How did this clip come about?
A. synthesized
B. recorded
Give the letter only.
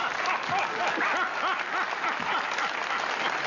B